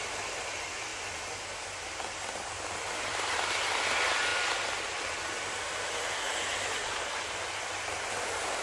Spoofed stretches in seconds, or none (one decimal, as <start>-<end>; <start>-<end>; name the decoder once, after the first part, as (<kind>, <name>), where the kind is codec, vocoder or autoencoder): 0.0-0.9 (vocoder, BigVGAN v2); 3.0-4.3